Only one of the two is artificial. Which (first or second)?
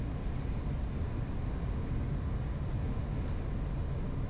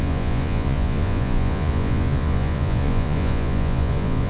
second